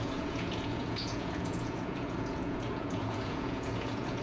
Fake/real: fake